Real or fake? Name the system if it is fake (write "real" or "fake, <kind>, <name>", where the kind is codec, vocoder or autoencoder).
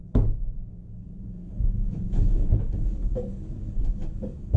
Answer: fake, codec, DAC